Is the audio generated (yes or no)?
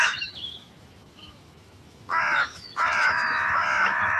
yes